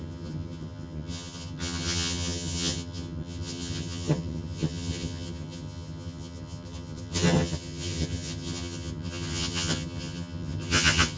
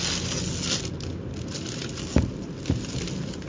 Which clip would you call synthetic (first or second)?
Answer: first